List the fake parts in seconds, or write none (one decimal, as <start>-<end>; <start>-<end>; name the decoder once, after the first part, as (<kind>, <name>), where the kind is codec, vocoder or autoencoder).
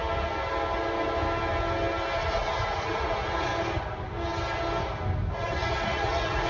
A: 2.2-3.5 (vocoder, Vocos); 5.3-6.5